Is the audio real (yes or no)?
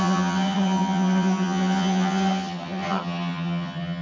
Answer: no